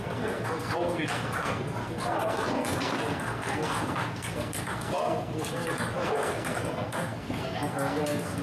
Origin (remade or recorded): remade